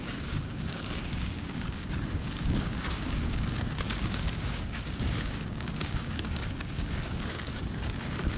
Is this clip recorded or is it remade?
remade